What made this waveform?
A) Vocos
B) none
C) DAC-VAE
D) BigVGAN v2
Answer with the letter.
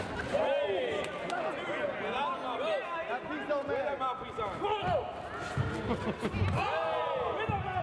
B